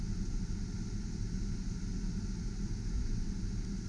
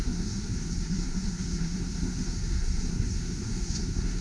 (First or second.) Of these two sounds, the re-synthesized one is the second